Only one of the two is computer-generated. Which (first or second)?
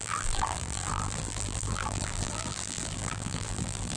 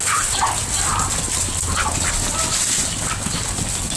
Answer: first